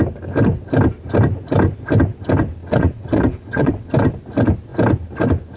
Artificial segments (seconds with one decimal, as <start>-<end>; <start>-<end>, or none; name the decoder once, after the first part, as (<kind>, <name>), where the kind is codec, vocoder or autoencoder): 2.6-3.9 (vocoder, WaveNeXt)